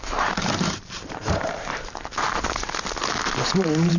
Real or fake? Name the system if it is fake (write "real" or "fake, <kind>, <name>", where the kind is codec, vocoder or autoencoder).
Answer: fake, vocoder, BigVGAN v2